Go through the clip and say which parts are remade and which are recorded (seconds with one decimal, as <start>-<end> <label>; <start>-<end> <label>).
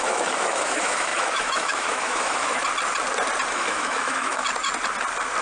0.0-2.6 remade; 2.6-3.5 recorded; 3.5-4.4 remade; 4.4-5.4 recorded